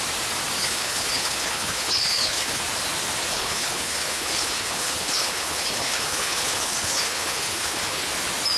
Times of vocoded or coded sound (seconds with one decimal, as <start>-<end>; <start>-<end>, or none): 0.6-2.6; 3.3-8.1

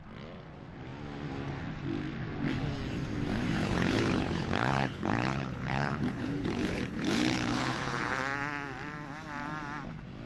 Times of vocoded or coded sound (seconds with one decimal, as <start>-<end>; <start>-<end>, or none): 3.6-8.2

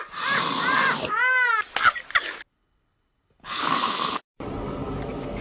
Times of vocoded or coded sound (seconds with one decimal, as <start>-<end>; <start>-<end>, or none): 2.5-4.2